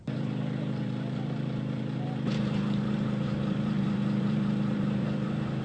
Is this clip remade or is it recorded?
remade